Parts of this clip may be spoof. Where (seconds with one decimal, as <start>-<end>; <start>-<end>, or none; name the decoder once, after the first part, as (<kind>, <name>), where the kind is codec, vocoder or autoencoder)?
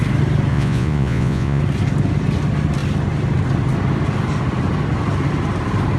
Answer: 0.5-1.6 (vocoder, Vocos)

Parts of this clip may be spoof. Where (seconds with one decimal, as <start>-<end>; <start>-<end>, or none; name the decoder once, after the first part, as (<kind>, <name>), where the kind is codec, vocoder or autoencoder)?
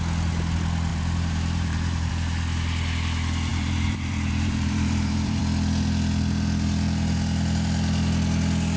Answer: 0.9-2.1 (vocoder, BigVGAN v2); 3.5-5.4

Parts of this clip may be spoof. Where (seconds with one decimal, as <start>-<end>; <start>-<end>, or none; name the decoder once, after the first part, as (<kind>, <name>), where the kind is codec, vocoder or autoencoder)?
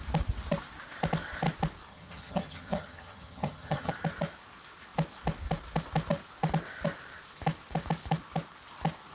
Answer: 1.9-3.9 (vocoder, HiFi-GAN)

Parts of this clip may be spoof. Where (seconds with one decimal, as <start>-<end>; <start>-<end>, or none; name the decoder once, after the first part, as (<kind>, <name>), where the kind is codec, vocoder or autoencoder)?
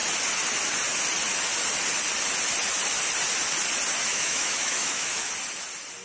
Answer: 4.1-5.3 (autoencoder, DAC-VAE)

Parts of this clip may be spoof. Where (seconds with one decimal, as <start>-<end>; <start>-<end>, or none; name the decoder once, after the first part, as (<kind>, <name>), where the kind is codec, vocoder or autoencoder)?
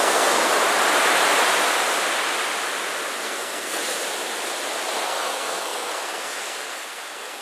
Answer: 0.0-0.5 (codec, SNAC); 3.2-3.8; 5.0-7.4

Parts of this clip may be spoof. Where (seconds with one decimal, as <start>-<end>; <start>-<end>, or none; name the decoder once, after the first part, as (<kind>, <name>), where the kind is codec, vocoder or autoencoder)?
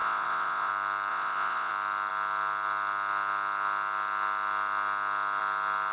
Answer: 0.0-0.7 (vocoder, Vocos); 1.1-1.7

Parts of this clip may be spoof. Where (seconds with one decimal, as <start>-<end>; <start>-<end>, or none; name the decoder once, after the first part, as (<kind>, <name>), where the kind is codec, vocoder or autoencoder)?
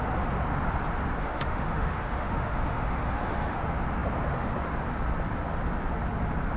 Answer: 1.2-3.6 (autoencoder, DAC-VAE)